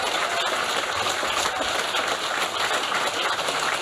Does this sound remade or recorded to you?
recorded